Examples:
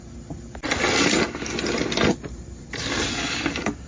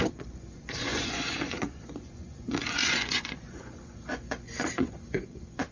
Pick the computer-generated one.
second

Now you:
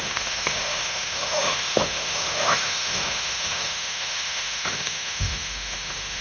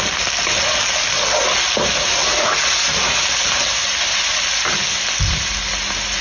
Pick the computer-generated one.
first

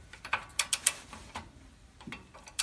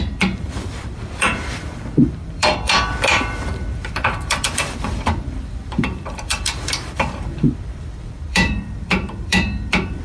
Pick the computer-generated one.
second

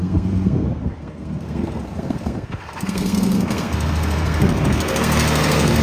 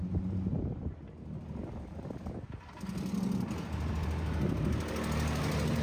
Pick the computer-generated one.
first